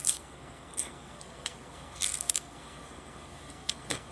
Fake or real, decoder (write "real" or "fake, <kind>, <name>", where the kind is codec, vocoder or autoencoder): fake, codec, SNAC